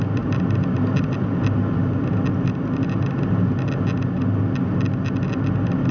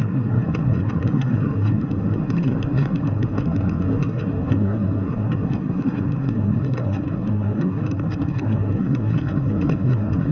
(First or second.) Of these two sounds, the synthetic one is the second